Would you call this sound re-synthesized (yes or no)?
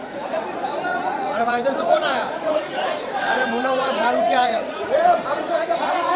yes